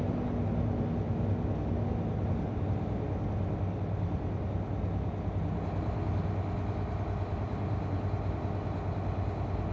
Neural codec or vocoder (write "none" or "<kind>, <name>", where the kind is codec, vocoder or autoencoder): none